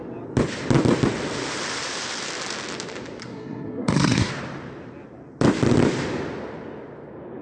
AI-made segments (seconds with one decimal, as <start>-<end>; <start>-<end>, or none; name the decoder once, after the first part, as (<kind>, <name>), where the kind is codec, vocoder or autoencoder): 3.2-4.3 (codec, SNAC)